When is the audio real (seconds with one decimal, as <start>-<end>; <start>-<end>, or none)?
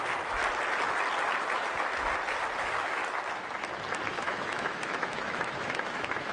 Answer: 0.4-2.6; 3.0-4.1